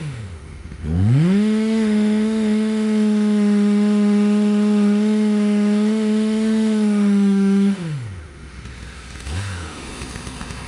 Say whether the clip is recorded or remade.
remade